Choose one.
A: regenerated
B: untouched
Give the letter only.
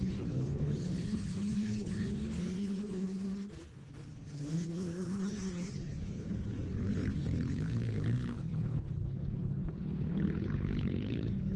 A